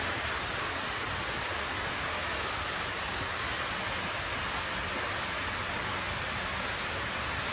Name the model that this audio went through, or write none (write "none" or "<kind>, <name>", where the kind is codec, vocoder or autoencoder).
none